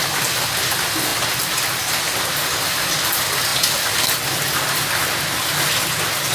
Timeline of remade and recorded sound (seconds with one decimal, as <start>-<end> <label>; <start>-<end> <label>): 0.0-6.3 recorded